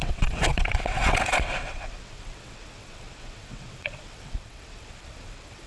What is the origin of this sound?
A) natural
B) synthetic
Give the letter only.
B